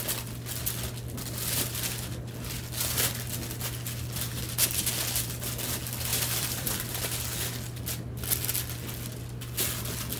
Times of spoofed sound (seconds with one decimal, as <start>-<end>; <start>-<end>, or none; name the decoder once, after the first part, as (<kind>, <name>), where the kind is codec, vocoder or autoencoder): 6.1-6.9 (vocoder, BigVGAN v2)